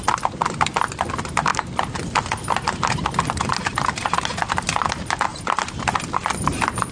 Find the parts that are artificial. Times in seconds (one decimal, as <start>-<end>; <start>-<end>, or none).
0.0-5.3; 6.2-6.9